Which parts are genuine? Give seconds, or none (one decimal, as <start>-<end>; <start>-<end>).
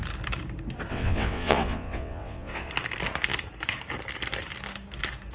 0.0-0.9; 2.7-5.3